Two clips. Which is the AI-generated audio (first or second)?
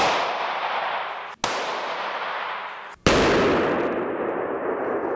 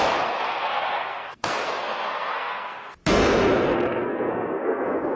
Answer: second